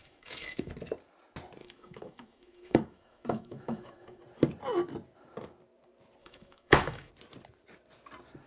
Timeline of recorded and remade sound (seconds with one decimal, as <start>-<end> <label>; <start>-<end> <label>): 0.0-0.7 remade; 0.7-1.6 recorded; 1.6-4.2 remade; 4.2-6.2 recorded; 6.2-7.1 remade; 7.1-8.5 recorded